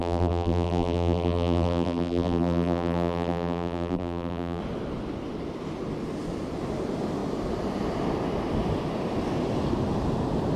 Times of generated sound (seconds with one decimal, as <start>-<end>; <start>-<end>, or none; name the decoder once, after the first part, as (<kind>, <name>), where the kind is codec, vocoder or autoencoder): 0.0-4.6 (vocoder, BigVGAN v2)